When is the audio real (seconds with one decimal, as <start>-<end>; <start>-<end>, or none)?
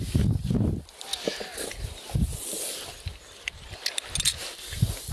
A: 0.0-5.1